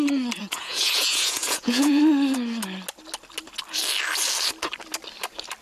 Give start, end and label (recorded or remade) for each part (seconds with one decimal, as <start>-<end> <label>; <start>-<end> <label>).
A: 0.0-0.4 recorded; 0.4-2.0 remade; 2.0-5.6 recorded